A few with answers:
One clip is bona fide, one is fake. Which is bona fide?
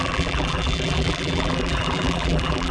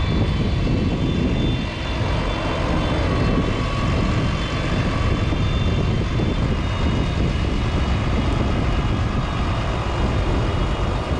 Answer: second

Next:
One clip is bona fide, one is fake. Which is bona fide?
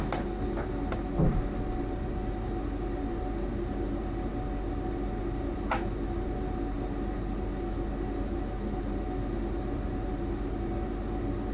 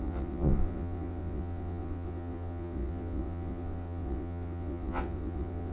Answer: first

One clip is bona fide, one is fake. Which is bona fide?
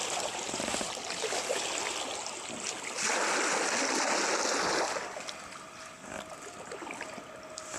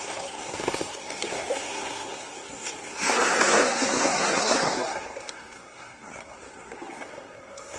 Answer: first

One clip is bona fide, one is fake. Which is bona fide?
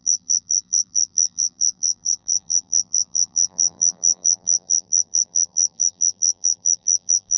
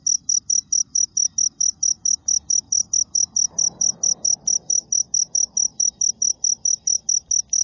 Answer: second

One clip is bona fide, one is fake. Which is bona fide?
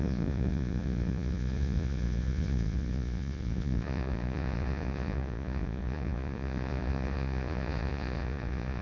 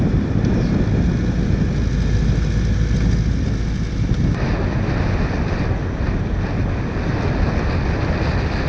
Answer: second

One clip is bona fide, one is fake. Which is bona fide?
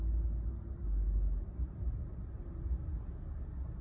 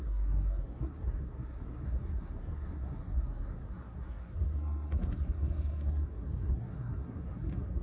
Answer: first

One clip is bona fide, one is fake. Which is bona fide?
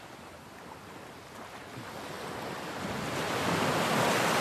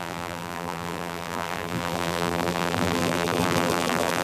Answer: first